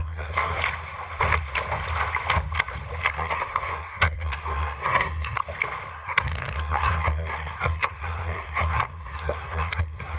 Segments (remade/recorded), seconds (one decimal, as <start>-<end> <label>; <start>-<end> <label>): 0.0-0.6 remade; 0.6-3.1 recorded; 3.1-5.4 remade; 5.4-5.9 recorded; 5.9-10.2 remade